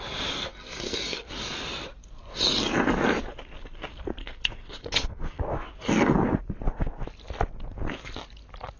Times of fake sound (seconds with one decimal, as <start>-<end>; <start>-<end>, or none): 0.4-1.3; 4.2-5.4